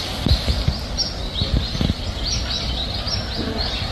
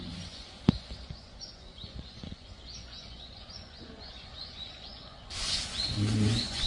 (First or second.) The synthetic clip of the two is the second